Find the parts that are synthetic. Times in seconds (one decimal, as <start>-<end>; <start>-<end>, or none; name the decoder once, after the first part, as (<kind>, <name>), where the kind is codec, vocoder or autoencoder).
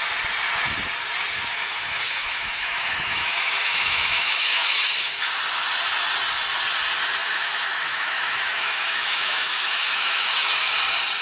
1.5-5.3 (autoencoder, DAC-VAE); 7.2-10.7